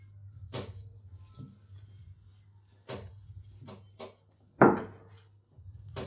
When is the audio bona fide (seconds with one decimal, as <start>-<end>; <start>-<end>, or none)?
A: 0.0-6.1